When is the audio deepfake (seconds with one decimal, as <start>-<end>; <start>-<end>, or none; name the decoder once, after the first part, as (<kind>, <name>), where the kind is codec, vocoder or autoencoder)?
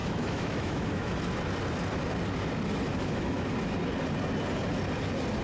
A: 0.0-1.2 (autoencoder, DAC-VAE); 2.9-3.5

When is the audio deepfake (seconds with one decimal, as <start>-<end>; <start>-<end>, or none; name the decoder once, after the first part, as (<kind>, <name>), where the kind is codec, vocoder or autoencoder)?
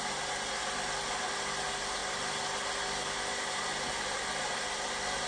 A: none